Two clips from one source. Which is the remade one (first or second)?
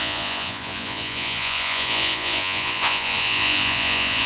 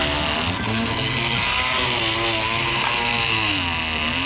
first